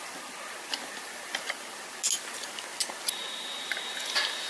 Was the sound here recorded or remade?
recorded